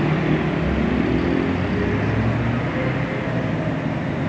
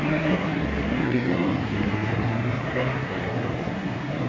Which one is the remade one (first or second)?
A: second